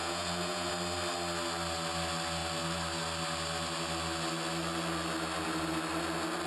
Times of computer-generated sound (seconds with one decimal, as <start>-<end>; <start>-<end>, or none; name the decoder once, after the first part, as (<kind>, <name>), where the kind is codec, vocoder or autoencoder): 0.0-0.7 (vocoder, Vocos)